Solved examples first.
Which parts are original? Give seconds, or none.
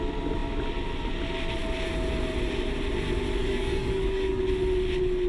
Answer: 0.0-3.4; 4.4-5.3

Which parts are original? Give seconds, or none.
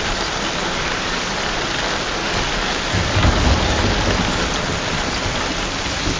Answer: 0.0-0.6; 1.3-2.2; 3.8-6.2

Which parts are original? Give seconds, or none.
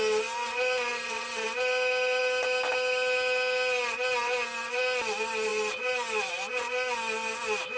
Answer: 0.0-7.8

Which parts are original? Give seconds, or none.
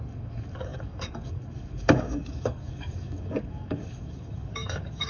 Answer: none